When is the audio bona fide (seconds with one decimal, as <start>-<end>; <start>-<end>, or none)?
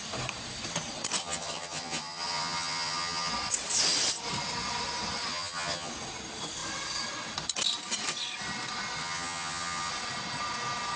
0.0-1.2; 3.3-5.3; 5.9-9.0; 9.9-11.0